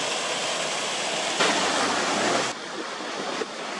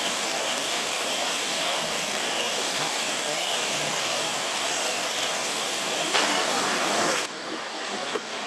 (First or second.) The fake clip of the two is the second